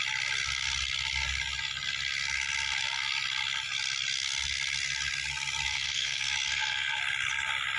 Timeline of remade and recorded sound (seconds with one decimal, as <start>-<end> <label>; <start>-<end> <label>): 0.0-5.7 recorded; 5.7-7.0 remade; 7.0-7.8 recorded